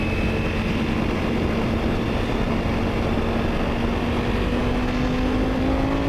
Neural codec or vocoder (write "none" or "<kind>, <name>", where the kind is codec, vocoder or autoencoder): none